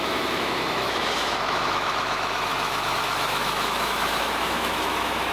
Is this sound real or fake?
fake